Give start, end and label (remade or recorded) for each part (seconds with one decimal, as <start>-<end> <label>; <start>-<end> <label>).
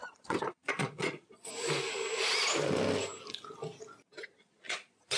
0.0-1.5 remade; 1.5-4.3 recorded; 4.3-5.2 remade